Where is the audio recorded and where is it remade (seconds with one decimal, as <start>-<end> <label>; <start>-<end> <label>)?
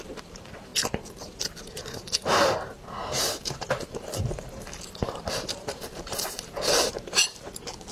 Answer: 0.0-0.7 remade; 0.7-3.2 recorded; 3.2-7.9 remade